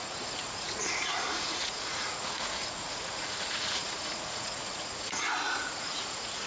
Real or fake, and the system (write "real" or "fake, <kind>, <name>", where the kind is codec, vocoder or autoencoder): fake, vocoder, Vocos